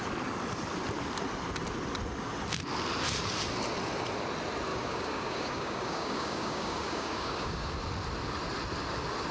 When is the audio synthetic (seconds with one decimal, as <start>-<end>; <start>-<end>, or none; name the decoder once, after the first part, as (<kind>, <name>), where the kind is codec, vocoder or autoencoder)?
4.7-7.7 (codec, DAC)